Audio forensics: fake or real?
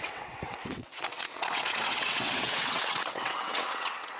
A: fake